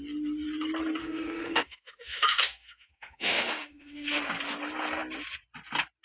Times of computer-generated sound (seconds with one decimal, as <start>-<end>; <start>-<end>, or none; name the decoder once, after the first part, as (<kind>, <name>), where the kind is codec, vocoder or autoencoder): 1.0-4.2 (autoencoder, DAC-VAE)